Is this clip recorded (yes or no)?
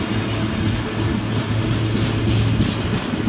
yes